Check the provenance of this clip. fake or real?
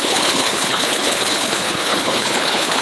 fake